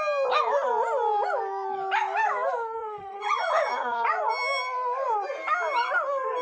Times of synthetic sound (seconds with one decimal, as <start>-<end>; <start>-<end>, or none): 2.8-4.2